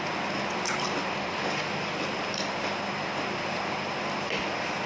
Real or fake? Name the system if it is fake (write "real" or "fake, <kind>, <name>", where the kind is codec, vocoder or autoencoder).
real